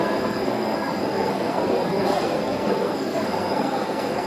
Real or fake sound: fake